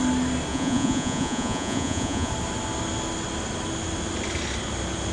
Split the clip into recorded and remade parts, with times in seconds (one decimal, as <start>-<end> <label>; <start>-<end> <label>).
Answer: 0.0-0.5 recorded; 0.5-2.3 remade; 2.3-5.1 recorded